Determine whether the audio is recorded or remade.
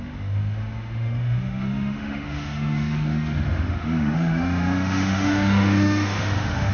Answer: remade